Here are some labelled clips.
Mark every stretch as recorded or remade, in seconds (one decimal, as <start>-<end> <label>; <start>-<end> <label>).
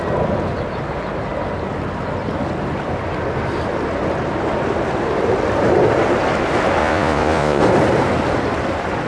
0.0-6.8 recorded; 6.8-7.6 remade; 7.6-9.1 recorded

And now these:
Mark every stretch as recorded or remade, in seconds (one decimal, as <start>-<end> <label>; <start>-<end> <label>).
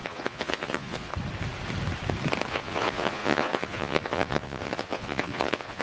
0.0-1.1 remade; 1.1-2.5 recorded; 2.5-5.8 remade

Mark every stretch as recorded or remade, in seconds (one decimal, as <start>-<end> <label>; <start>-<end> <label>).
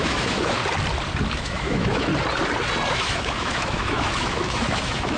0.0-0.6 remade; 0.6-1.3 recorded; 1.3-2.1 remade; 2.1-2.9 recorded; 2.9-5.2 remade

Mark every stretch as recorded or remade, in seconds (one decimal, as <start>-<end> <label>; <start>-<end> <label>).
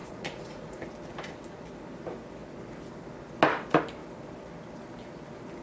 0.0-0.8 remade; 0.8-5.6 recorded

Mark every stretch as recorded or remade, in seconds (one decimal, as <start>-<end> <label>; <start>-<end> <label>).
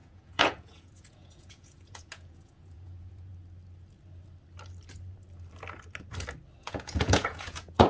0.0-3.3 remade; 3.3-6.6 recorded; 6.6-7.9 remade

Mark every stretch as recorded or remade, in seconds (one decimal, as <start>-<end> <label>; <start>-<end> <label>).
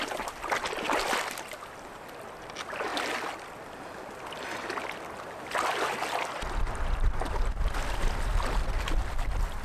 0.0-9.6 recorded